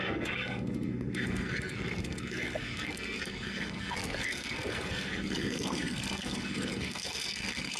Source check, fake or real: fake